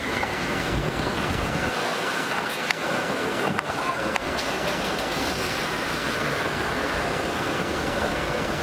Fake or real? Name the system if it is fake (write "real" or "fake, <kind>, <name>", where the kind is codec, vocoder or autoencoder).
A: fake, codec, SNAC